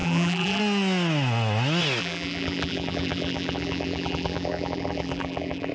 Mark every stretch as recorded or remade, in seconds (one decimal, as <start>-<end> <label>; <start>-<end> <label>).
0.0-0.6 remade; 0.6-2.0 recorded; 2.0-5.7 remade